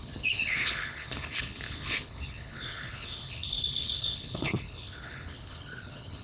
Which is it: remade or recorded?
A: remade